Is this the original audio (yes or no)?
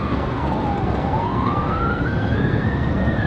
no